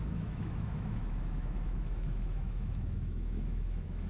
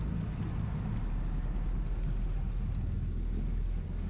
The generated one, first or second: first